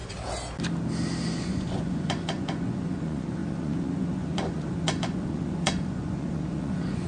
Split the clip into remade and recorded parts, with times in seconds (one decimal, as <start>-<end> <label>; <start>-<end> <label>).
0.0-1.4 recorded; 1.4-7.1 remade

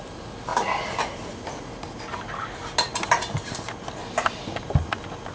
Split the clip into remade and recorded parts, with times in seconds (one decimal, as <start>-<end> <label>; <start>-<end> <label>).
0.0-5.3 recorded

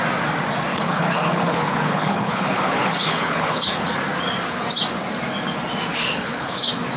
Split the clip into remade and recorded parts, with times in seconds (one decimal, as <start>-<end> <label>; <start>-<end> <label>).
0.0-0.7 recorded; 0.7-3.9 remade; 3.9-6.0 recorded; 6.0-6.6 remade; 6.6-7.0 recorded